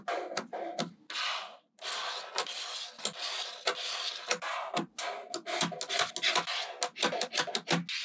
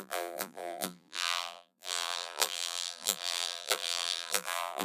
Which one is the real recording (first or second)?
first